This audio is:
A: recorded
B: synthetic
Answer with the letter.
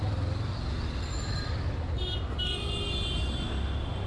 A